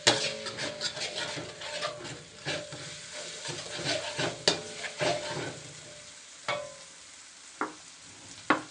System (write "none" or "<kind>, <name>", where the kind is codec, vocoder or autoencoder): none